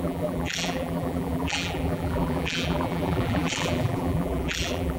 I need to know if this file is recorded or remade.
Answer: remade